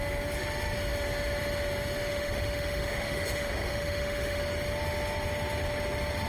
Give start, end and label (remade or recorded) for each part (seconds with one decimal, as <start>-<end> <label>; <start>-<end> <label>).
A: 0.0-2.1 recorded; 2.1-4.4 remade; 4.4-6.3 recorded